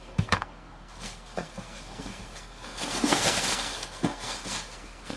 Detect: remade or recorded remade